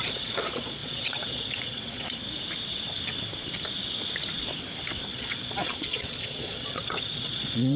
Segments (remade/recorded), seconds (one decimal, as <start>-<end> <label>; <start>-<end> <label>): 0.0-2.2 remade; 2.2-5.1 recorded; 5.1-7.8 remade